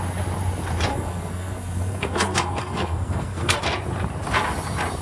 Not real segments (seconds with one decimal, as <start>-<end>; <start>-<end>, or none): 0.9-3.6